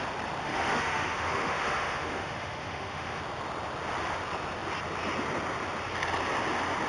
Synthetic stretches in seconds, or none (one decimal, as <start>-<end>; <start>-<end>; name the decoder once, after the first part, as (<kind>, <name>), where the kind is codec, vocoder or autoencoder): 0.4-3.2 (autoencoder, DAC-VAE)